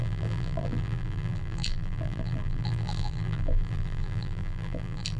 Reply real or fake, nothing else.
fake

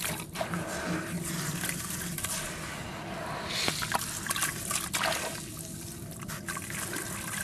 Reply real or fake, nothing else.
real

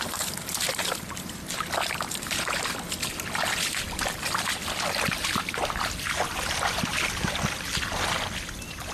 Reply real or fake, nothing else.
real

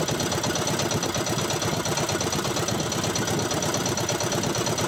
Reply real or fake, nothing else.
real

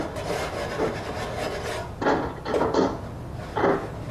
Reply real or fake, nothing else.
real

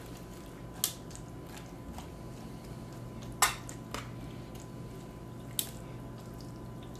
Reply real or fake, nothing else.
real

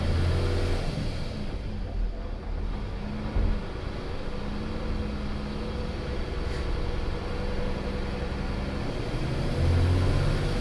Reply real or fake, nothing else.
real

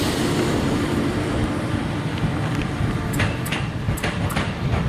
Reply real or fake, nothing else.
fake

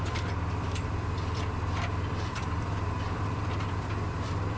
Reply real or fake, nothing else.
fake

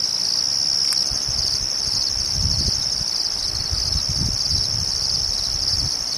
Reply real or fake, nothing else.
real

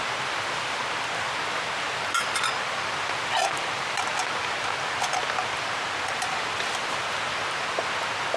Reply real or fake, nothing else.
real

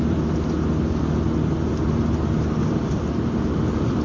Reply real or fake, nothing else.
real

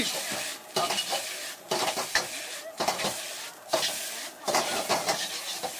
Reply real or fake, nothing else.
real